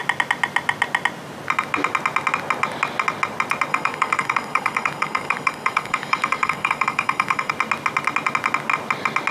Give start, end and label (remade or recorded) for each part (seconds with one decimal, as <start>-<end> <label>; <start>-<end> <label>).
0.0-3.7 recorded; 3.7-7.5 remade; 7.5-9.3 recorded